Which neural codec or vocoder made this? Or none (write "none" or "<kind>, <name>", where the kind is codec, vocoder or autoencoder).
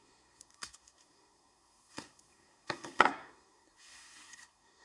codec, SNAC